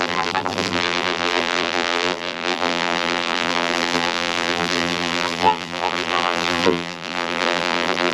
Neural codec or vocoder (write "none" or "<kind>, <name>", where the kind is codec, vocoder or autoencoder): vocoder, BigVGAN v2